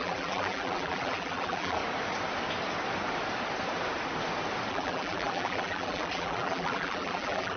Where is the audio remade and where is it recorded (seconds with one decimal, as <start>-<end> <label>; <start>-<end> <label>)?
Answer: 0.0-1.8 remade; 1.8-4.7 recorded; 4.7-7.6 remade